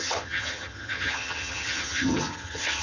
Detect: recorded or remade remade